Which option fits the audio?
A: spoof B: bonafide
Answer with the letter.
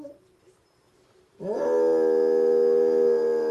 B